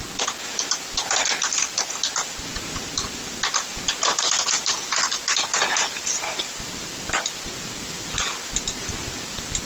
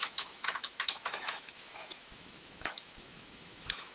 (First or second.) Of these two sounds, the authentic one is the first